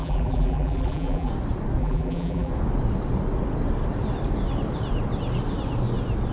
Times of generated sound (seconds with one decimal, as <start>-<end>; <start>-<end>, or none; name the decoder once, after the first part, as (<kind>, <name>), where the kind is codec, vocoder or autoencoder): 0.0-1.3 (vocoder, BigVGAN v2); 1.8-2.5